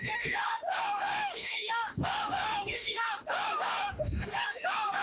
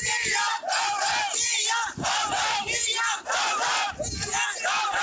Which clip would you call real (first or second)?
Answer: second